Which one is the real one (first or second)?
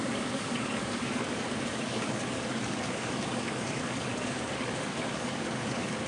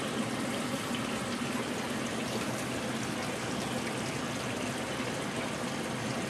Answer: second